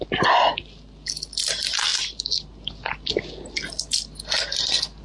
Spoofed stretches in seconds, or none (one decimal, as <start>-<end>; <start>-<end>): none